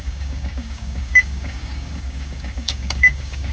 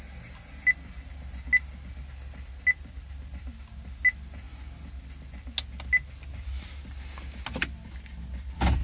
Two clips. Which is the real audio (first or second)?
second